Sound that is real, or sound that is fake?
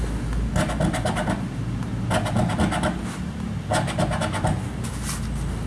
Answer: real